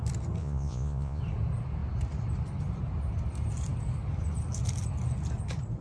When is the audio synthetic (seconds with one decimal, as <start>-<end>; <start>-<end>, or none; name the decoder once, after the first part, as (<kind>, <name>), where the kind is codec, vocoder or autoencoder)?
0.4-1.2 (vocoder, Vocos)